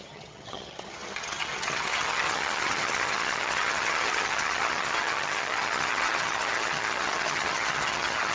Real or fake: fake